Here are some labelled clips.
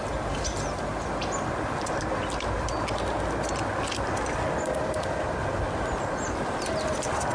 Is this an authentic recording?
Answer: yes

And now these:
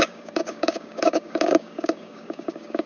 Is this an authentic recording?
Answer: no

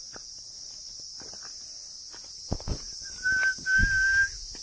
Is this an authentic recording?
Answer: yes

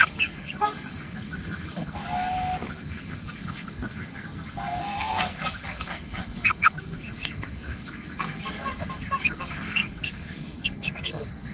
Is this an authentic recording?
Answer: no